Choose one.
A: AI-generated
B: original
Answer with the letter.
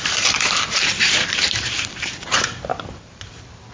A